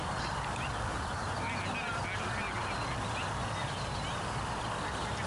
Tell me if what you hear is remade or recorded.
recorded